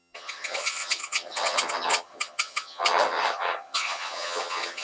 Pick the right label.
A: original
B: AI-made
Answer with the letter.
B